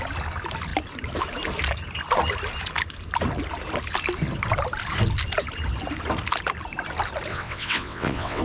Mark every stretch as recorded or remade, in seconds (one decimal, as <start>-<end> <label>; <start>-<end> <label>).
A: 0.0-7.3 recorded; 7.3-8.4 remade